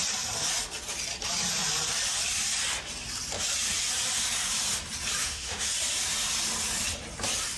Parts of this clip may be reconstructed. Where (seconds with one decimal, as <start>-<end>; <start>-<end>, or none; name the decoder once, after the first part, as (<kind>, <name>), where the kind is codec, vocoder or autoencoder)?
5.2-5.7 (autoencoder, DAC-VAE)